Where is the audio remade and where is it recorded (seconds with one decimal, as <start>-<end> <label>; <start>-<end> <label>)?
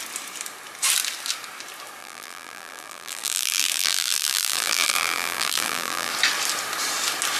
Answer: 0.0-2.0 recorded; 2.0-6.1 remade; 6.1-7.4 recorded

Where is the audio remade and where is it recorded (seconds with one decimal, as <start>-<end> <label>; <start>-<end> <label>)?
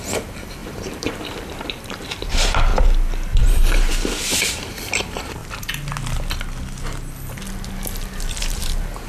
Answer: 0.0-2.7 remade; 2.7-3.3 recorded; 3.3-5.4 remade; 5.4-8.4 recorded; 8.4-9.1 remade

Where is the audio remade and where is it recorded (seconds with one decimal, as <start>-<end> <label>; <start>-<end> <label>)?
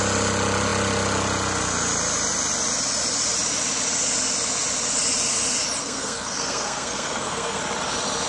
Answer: 0.0-5.8 recorded; 5.8-7.6 remade; 7.6-8.3 recorded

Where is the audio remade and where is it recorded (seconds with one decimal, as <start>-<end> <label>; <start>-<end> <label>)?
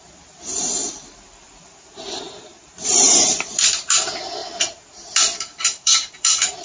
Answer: 0.0-4.4 remade; 4.4-5.4 recorded; 5.4-6.6 remade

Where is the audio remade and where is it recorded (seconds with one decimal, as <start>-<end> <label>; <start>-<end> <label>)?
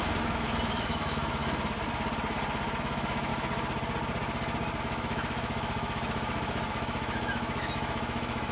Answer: 0.0-1.4 remade; 1.4-2.8 recorded; 2.8-3.3 remade; 3.3-4.8 recorded; 4.8-8.5 remade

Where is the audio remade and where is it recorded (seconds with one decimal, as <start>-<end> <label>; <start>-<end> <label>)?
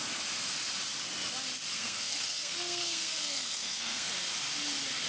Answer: 0.0-1.7 recorded; 1.7-4.1 remade; 4.1-5.1 recorded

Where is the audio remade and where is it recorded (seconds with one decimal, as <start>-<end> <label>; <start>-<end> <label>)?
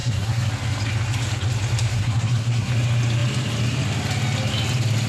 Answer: 0.0-0.5 remade; 0.5-1.9 recorded; 1.9-2.7 remade; 2.7-5.1 recorded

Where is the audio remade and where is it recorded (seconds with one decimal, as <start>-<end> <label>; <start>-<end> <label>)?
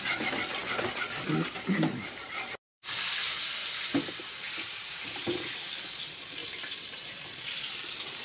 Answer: 0.0-0.6 recorded; 0.6-3.1 remade; 3.1-3.6 recorded; 3.6-5.7 remade; 5.7-6.4 recorded; 6.4-7.7 remade; 7.7-8.2 recorded